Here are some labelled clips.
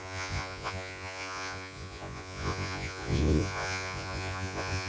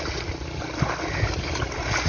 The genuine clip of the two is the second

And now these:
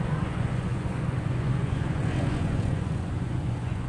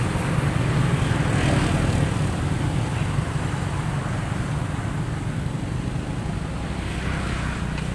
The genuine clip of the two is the second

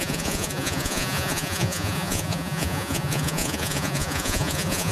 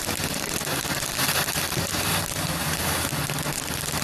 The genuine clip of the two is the second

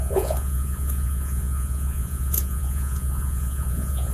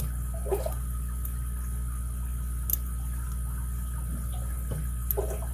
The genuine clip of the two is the second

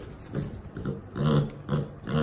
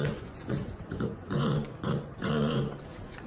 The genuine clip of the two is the first